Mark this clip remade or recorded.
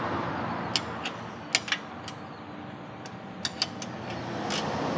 recorded